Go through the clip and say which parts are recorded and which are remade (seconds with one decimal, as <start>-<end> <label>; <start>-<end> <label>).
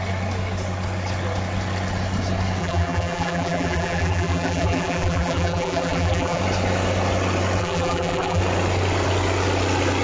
0.0-2.6 recorded; 2.6-6.4 remade; 6.4-7.6 recorded; 7.6-8.4 remade; 8.4-10.0 recorded